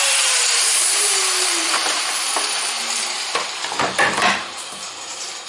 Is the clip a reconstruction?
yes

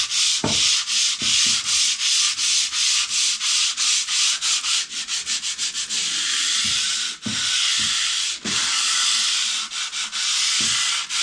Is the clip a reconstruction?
no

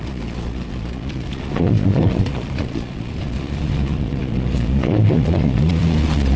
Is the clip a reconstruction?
yes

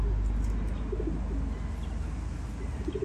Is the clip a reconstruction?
no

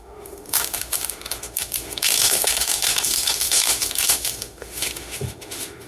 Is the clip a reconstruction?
yes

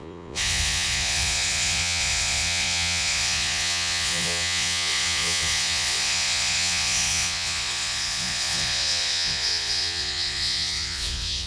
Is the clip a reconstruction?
yes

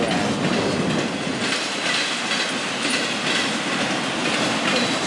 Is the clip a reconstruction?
no